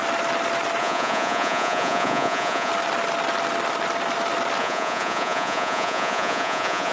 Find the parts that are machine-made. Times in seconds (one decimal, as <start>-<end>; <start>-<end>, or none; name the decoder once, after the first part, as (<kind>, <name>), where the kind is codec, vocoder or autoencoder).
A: 0.8-2.7 (vocoder, Vocos); 4.6-6.9